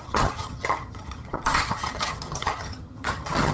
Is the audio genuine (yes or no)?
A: no